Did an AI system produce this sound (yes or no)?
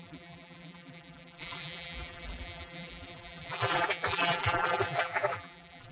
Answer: yes